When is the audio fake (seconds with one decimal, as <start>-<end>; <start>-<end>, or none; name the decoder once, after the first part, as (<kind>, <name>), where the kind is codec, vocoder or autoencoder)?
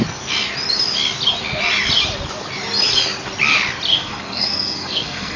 3.9-5.4 (codec, SNAC)